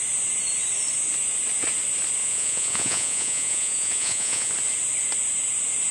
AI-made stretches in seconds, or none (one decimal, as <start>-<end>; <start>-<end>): 2.2-4.5